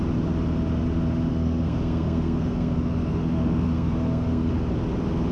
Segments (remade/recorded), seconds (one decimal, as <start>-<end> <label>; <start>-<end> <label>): 0.0-1.3 recorded; 1.3-4.5 remade; 4.5-5.3 recorded